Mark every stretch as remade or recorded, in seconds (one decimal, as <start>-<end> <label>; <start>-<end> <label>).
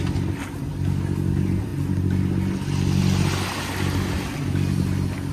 0.0-5.3 recorded